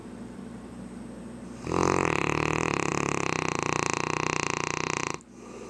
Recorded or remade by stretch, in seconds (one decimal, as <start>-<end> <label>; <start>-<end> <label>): 0.0-0.7 remade; 0.7-5.7 recorded